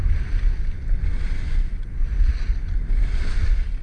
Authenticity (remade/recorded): recorded